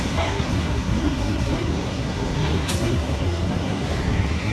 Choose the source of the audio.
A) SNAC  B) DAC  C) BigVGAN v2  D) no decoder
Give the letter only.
A